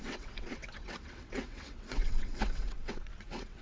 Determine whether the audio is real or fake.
fake